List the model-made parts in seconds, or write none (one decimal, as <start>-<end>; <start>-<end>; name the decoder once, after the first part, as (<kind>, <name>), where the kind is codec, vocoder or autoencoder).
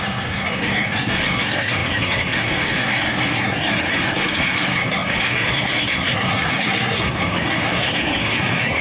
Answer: 0.0-8.8 (codec, SNAC)